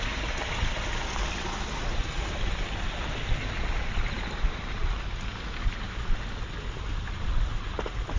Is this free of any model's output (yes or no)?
yes